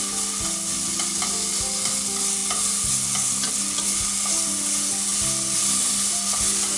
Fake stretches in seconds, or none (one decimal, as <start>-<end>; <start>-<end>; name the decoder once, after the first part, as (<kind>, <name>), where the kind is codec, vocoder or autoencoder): none